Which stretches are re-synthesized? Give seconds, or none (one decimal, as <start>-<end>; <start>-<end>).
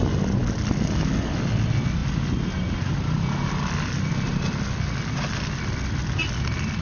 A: none